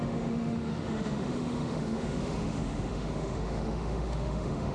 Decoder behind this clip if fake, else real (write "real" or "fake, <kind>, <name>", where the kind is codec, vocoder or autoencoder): fake, autoencoder, DAC-VAE